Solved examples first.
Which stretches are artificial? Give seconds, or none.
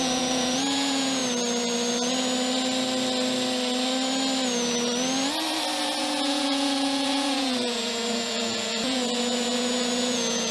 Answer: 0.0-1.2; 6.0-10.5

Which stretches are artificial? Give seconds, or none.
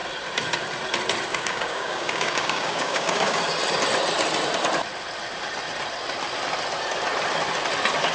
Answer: 1.3-3.4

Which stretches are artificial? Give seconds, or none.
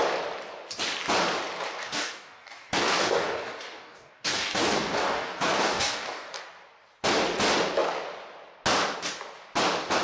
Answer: 1.8-6.3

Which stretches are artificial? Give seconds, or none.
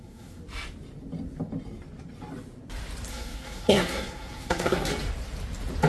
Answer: 0.0-0.4; 3.1-4.9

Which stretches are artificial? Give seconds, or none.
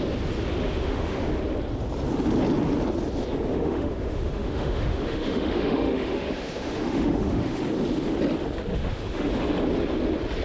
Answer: 0.6-1.3; 3.5-7.6; 8.7-9.3